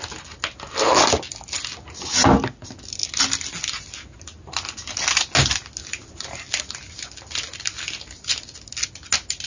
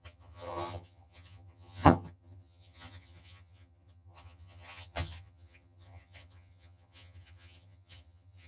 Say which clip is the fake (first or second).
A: second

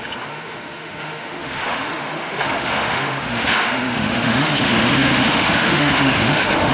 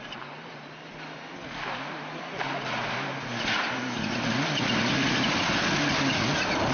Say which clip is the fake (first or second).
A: first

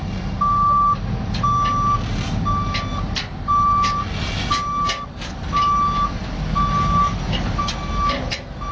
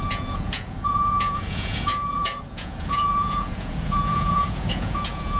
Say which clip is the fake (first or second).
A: second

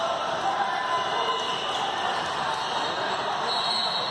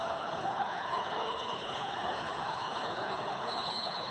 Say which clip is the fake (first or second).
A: second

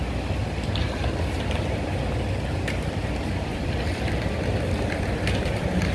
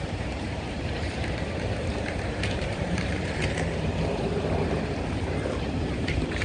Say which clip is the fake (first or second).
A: second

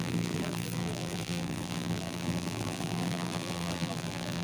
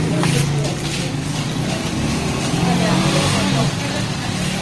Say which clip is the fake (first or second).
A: first